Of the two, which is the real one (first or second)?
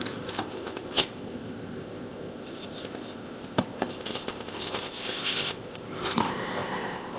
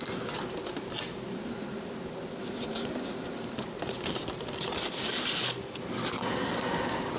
second